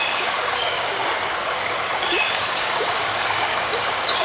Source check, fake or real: fake